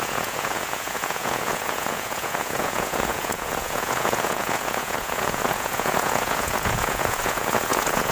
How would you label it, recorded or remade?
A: remade